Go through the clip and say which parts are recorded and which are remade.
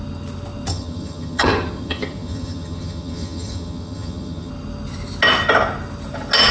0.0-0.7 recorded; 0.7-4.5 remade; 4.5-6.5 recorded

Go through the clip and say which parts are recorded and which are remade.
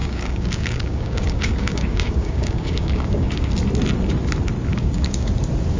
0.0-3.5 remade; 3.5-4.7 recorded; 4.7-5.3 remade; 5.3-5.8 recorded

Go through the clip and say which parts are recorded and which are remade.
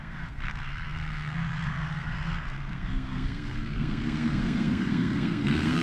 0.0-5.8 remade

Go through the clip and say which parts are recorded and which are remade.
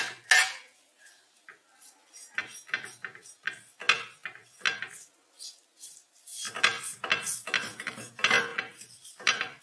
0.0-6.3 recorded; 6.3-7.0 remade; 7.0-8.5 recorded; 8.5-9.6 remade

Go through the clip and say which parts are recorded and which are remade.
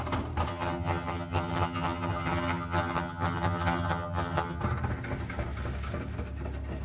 0.0-0.5 recorded; 0.5-4.6 remade; 4.6-6.8 recorded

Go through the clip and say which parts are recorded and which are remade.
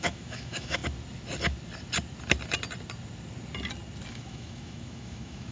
0.0-0.8 remade; 0.8-4.1 recorded; 4.1-5.5 remade